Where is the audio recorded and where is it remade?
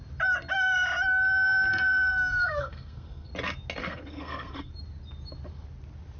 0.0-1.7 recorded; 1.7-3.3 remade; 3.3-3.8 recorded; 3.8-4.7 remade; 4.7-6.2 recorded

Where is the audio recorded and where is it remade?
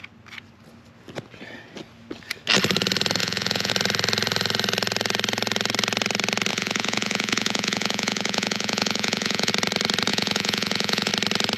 0.0-3.2 recorded; 3.2-3.7 remade; 3.7-6.5 recorded; 6.5-9.5 remade; 9.5-10.1 recorded; 10.1-11.1 remade; 11.1-11.6 recorded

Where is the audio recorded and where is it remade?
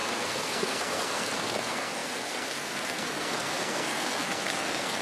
0.0-5.0 remade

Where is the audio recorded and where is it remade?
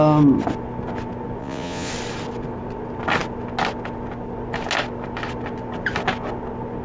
0.0-1.4 recorded; 1.4-1.9 remade; 1.9-6.8 recorded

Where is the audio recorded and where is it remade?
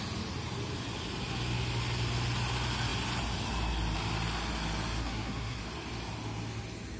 0.0-5.0 recorded; 5.0-5.6 remade; 5.6-7.0 recorded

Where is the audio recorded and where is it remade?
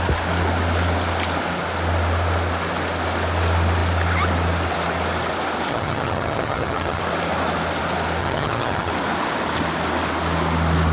0.0-5.7 recorded; 5.7-7.0 remade; 7.0-8.2 recorded; 8.2-8.9 remade; 8.9-10.9 recorded